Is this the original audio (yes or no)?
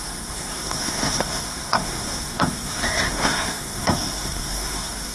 no